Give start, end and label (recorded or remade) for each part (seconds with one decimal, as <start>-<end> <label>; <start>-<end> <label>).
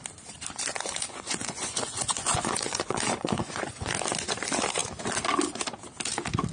0.0-0.7 recorded; 0.7-3.9 remade; 3.9-6.5 recorded